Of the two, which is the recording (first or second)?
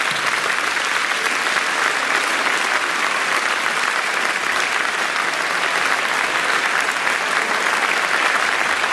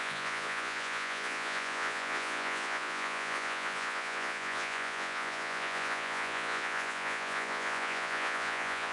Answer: first